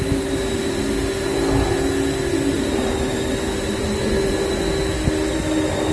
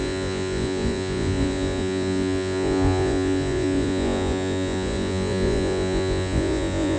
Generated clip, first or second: second